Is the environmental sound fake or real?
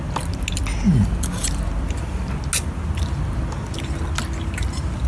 real